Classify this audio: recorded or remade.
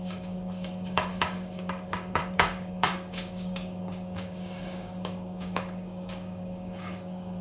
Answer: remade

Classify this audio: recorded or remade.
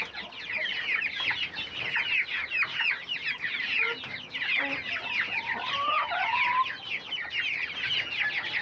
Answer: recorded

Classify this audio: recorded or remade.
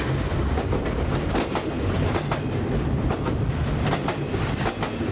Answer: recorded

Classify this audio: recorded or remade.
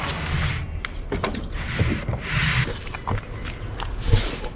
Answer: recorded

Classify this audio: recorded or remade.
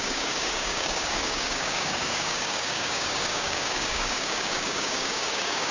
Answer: remade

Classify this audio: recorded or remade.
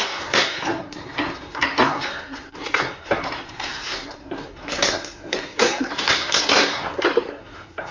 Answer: remade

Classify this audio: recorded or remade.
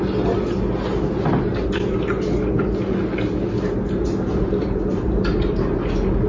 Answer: recorded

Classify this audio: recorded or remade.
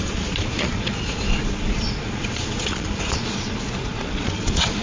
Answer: remade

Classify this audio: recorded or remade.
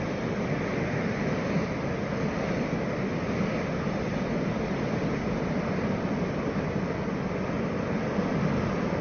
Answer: recorded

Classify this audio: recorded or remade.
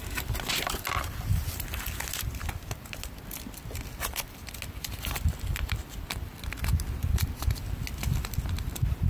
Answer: recorded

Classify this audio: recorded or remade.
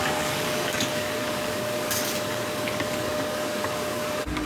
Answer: remade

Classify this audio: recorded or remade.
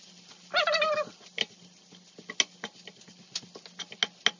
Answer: recorded